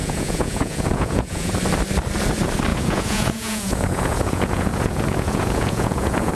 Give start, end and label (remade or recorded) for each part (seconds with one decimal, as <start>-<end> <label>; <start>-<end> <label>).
0.0-1.5 remade; 1.5-2.7 recorded; 2.7-6.3 remade